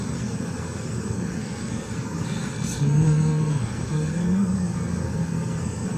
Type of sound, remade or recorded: remade